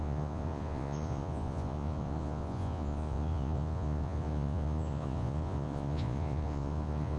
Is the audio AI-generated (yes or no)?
yes